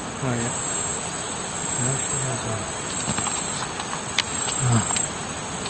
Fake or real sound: real